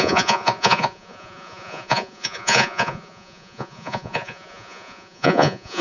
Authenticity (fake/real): fake